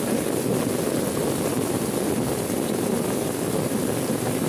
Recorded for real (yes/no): yes